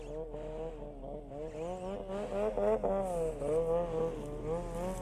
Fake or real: real